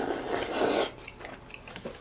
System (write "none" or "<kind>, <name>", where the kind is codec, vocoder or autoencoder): none